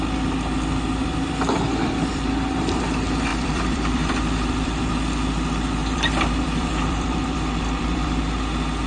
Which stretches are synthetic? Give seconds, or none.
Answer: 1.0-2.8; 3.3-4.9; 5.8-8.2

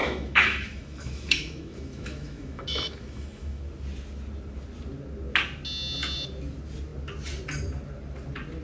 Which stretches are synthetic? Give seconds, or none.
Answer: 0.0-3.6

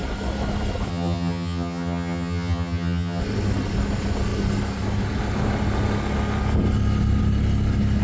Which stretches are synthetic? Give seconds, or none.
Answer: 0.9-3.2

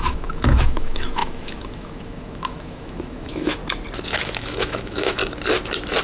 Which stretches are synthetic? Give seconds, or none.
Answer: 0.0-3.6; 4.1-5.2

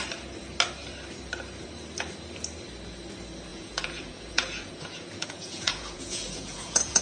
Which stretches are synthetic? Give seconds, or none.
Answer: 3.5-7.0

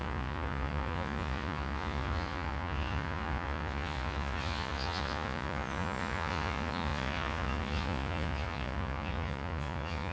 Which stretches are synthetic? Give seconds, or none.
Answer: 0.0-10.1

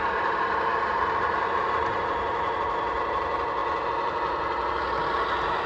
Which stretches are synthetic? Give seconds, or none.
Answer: 0.0-5.7